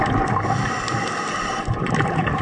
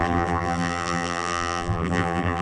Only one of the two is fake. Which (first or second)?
second